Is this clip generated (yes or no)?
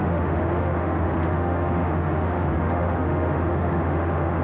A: yes